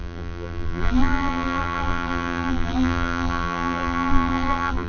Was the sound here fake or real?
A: fake